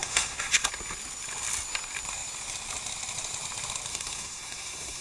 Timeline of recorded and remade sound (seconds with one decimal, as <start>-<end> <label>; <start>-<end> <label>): 0.0-0.7 remade; 0.7-3.9 recorded; 3.9-5.0 remade